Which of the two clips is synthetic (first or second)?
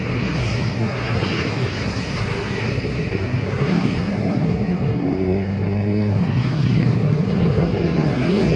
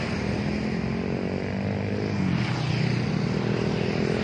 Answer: first